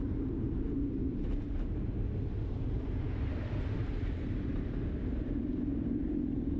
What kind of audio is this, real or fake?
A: fake